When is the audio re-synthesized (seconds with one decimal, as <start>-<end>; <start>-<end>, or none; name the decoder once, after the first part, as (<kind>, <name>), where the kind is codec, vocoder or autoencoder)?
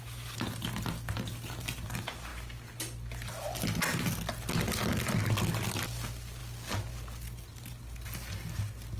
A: none